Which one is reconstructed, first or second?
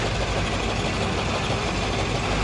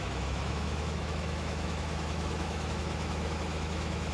second